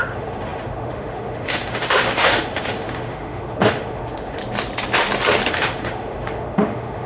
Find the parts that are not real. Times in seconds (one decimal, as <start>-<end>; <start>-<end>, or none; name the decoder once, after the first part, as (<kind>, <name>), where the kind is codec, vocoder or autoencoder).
0.0-4.4 (autoencoder, DAC-VAE); 5.5-7.1